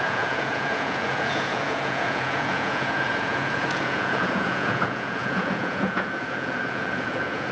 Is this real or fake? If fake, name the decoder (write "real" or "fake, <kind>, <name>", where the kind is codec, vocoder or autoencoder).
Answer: fake, vocoder, Vocos